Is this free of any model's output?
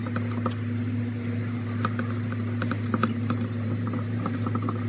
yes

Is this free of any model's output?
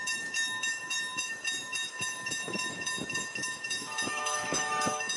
no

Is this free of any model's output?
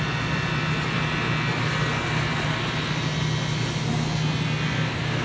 yes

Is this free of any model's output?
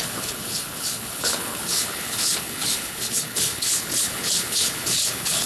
no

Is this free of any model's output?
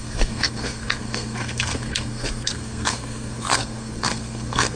no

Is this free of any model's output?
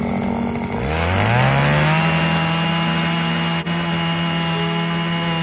yes